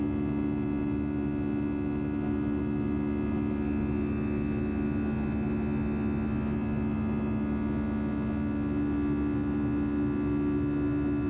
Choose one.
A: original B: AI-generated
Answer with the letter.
A